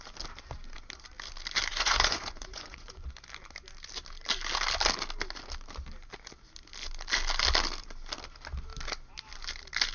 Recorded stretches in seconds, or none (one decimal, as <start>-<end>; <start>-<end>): 0.0-1.7; 3.1-9.9